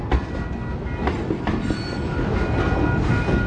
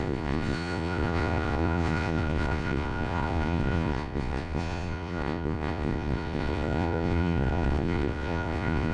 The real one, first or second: first